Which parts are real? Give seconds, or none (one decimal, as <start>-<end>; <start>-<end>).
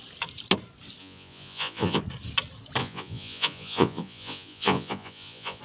0.0-1.0; 2.0-2.8